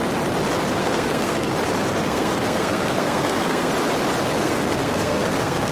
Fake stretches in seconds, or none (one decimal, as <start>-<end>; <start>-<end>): 0.8-1.5; 2.0-3.7; 4.4-5.7

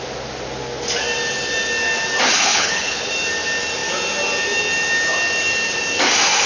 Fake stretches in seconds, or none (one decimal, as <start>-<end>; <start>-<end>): 2.3-3.1

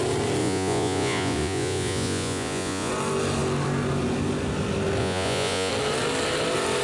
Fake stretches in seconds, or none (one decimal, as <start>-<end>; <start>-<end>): 0.4-2.9; 5.0-5.7

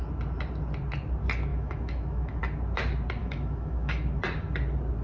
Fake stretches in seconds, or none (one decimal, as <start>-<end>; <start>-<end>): 1.5-2.4; 3.2-4.2

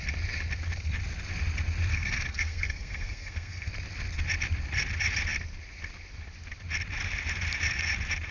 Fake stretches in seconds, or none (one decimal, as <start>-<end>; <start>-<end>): 1.9-3.7

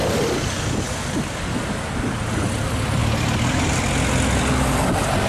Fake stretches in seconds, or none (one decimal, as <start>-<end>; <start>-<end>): none

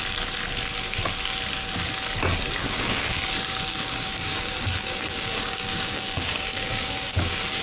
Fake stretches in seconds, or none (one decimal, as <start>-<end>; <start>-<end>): 2.6-3.2; 3.7-7.6

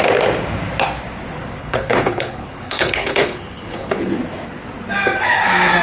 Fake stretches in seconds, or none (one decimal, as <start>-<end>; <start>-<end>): 1.6-4.1